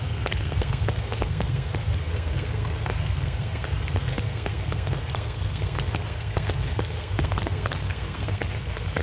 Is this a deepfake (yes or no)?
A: yes